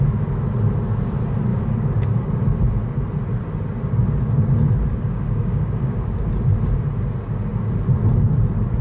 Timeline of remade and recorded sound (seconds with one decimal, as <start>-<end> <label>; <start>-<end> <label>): 0.0-1.5 recorded; 1.5-2.3 remade; 2.3-4.9 recorded; 4.9-6.3 remade; 6.3-8.8 recorded